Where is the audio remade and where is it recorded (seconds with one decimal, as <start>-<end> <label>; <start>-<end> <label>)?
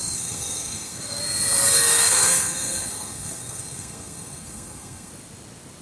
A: 0.0-1.2 remade; 1.2-1.6 recorded; 1.6-5.1 remade; 5.1-5.8 recorded